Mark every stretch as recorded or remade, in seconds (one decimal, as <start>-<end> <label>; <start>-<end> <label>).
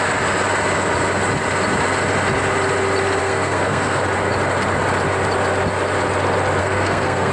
0.0-3.2 recorded; 3.2-4.0 remade; 4.0-6.6 recorded; 6.6-7.3 remade